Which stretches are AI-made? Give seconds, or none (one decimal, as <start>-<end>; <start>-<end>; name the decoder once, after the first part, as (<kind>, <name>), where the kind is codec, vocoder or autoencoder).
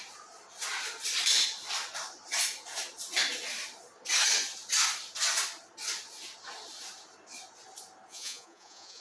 8.1-9.0 (vocoder, Vocos)